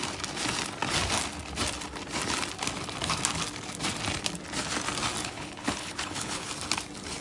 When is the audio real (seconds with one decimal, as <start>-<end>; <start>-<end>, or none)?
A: 0.0-5.2; 6.5-7.2